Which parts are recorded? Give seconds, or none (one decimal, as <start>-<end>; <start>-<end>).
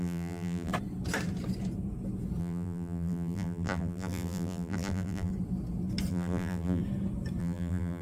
0.7-2.4; 5.3-6.1; 6.8-7.4